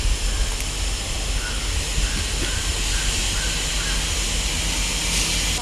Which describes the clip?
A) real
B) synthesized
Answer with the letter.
A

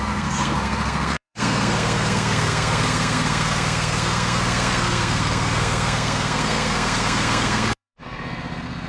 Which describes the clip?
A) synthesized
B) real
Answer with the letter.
A